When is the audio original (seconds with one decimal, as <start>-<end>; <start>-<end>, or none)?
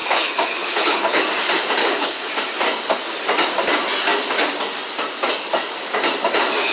1.2-1.8; 2.3-6.7